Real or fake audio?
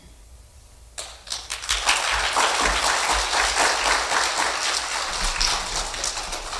real